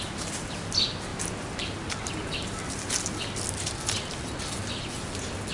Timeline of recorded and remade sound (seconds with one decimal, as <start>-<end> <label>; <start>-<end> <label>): 0.0-5.5 recorded